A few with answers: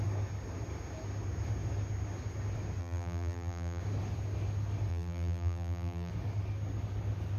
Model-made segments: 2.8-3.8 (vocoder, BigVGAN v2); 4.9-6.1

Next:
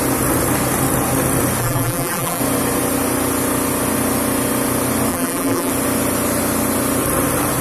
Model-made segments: 1.6-2.4 (vocoder, BigVGAN v2); 5.1-5.7